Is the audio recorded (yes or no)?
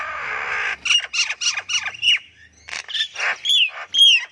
yes